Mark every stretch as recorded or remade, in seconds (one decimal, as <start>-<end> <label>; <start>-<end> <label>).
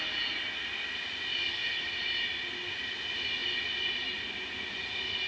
0.0-5.3 recorded